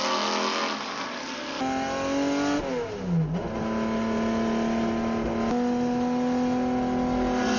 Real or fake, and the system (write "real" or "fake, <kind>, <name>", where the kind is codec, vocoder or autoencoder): real